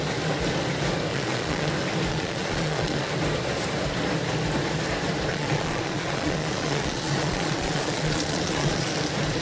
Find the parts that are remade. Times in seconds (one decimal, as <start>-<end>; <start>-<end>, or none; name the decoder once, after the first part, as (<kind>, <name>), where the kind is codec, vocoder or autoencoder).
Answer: 1.1-1.7 (vocoder, Vocos); 2.1-3.1; 5.3-8.9